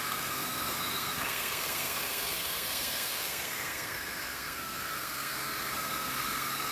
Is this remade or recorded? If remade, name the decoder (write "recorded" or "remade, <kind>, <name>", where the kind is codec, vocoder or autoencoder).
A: remade, codec, SNAC